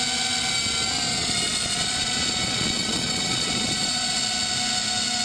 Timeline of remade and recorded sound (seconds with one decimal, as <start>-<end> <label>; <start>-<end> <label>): 0.0-1.1 recorded; 1.1-4.2 remade; 4.2-5.2 recorded